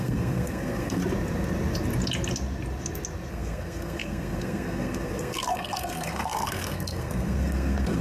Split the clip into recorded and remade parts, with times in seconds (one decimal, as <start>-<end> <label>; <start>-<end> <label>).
0.0-1.0 remade; 1.0-3.3 recorded; 3.3-8.0 remade